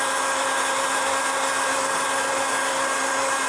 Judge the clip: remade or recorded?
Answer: recorded